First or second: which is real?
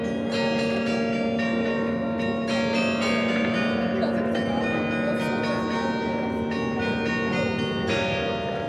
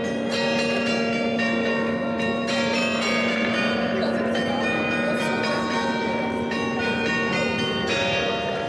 first